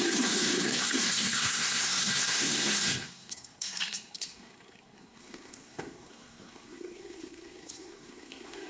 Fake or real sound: fake